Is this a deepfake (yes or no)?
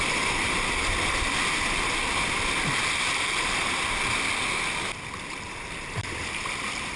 no